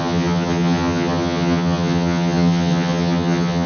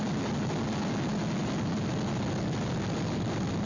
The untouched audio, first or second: second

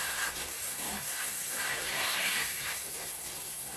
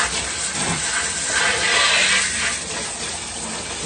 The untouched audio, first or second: second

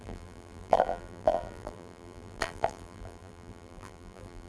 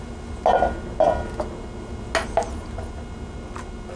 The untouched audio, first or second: second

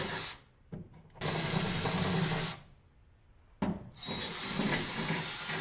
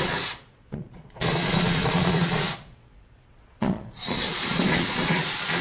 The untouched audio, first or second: first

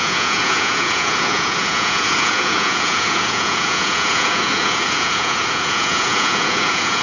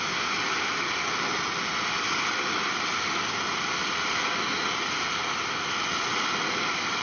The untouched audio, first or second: second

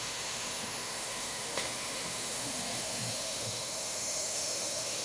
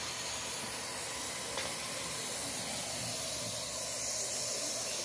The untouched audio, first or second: second